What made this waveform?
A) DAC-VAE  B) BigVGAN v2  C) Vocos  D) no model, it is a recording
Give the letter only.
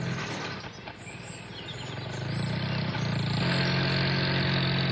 D